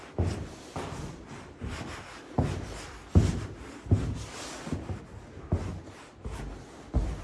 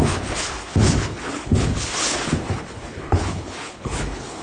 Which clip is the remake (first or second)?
second